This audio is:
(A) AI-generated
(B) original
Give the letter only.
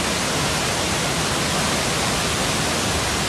B